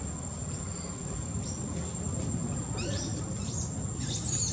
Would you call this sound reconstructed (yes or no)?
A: no